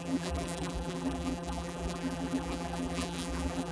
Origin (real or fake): fake